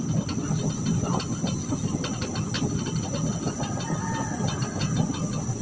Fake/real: real